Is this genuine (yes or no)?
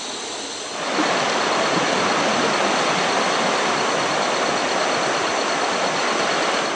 yes